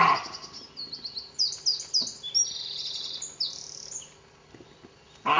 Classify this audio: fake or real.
real